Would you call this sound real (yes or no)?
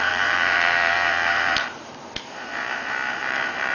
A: no